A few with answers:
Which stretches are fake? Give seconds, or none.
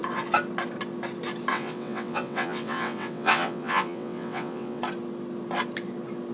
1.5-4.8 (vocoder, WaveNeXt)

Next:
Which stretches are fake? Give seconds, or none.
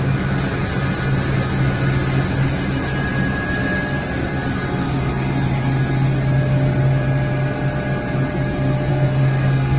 8.9-9.8 (codec, SNAC)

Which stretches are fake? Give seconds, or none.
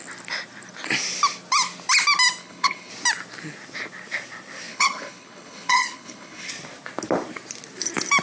2.4-2.9 (codec, HILCodec); 4.7-6.5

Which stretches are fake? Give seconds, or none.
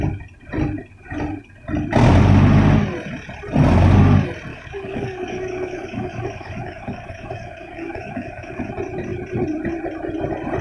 4.5-8.7 (codec, DAC)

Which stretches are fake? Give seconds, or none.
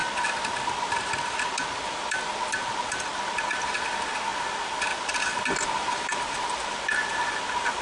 none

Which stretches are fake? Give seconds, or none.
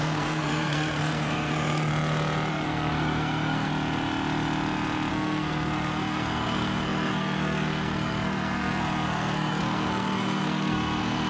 0.0-1.9 (codec, SNAC); 2.5-3.7; 5.1-11.3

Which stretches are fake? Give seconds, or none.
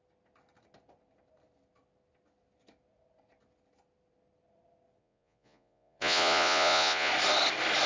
5.0-7.1 (vocoder, Vocos)